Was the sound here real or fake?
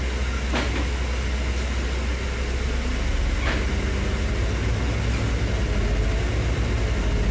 real